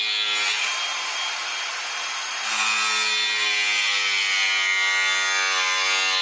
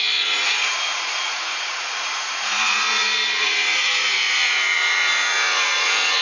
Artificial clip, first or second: second